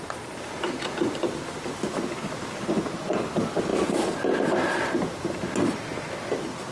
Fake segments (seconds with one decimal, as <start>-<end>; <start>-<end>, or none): none